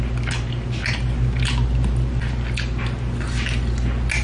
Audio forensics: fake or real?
real